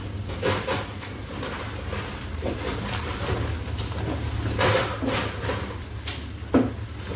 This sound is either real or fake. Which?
real